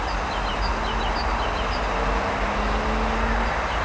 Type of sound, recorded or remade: recorded